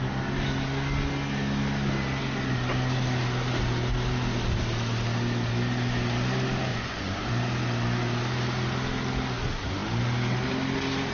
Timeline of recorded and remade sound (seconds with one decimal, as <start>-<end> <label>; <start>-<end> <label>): 0.0-6.7 recorded; 6.7-7.3 remade; 7.3-11.1 recorded